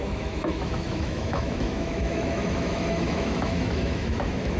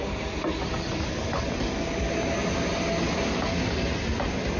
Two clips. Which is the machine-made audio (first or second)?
first